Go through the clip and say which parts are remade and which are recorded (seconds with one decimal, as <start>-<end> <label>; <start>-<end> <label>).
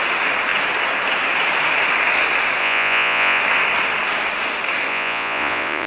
0.0-2.6 recorded; 2.6-3.4 remade; 3.4-4.9 recorded; 4.9-5.9 remade